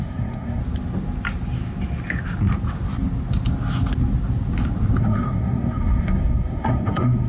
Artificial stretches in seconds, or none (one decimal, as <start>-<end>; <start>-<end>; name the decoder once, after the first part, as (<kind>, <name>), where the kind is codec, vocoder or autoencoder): 0.0-0.6 (codec, SNAC); 5.0-7.3